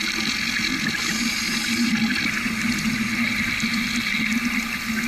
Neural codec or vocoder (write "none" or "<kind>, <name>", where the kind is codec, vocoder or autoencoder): none